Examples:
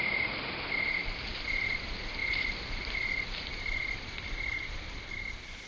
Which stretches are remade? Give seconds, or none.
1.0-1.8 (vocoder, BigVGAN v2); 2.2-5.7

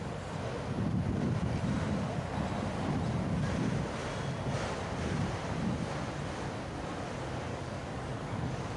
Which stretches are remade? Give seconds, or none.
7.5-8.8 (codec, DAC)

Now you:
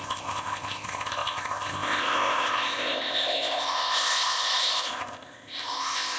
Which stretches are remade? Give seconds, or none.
0.0-6.2 (codec, ZipCodec)

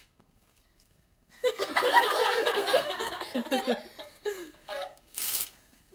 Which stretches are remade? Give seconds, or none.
0.0-3.4 (codec, SNAC); 4.0-5.9

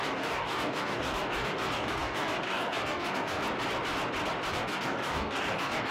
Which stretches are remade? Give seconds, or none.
0.0-3.4 (codec, DAC); 4.5-5.9

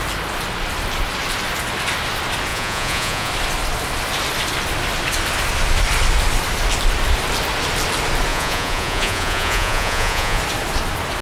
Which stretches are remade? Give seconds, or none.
2.5-3.3 (vocoder, Vocos); 8.3-10.4

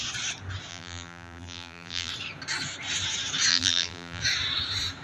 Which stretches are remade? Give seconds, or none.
0.7-2.1 (vocoder, BigVGAN v2); 3.5-4.2

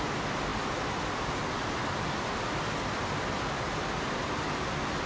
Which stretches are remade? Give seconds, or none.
none